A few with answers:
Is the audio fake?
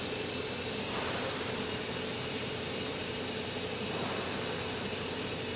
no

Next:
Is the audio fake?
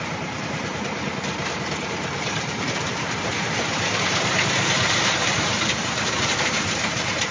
yes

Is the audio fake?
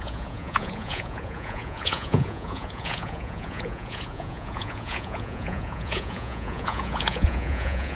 yes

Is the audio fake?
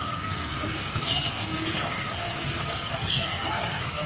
yes